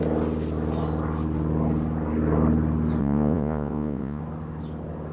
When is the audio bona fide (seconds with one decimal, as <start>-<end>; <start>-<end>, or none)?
0.0-3.0; 4.2-5.1